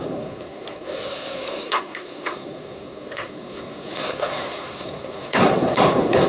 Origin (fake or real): fake